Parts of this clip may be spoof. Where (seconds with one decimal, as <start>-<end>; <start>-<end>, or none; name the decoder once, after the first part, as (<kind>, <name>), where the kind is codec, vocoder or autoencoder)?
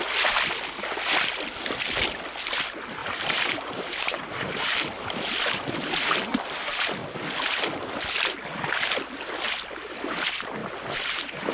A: 3.0-4.6 (vocoder, BigVGAN v2); 10.6-11.5